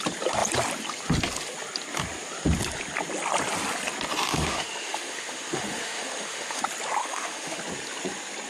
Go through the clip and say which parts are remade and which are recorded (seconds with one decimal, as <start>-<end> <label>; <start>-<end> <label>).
0.0-4.3 recorded; 4.3-6.6 remade; 6.6-7.0 recorded; 7.0-7.6 remade; 7.6-8.5 recorded